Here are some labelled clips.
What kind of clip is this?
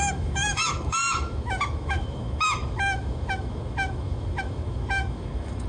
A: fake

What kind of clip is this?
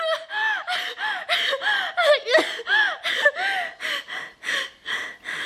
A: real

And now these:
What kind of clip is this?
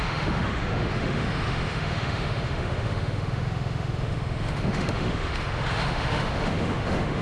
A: fake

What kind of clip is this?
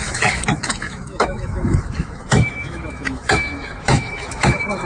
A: fake